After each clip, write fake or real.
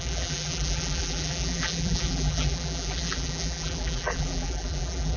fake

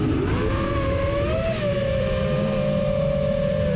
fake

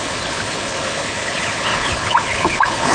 fake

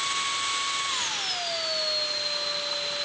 real